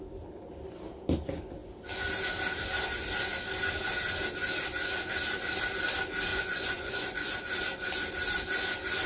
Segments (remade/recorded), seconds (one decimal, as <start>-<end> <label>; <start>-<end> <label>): 0.0-6.3 recorded; 6.3-7.3 remade; 7.3-9.1 recorded